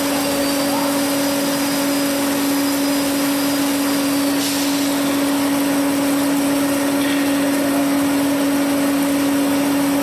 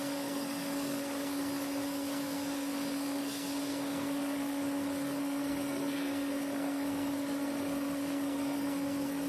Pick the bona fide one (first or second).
first